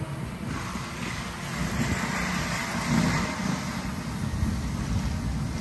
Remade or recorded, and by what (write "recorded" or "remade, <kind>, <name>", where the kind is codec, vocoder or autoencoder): recorded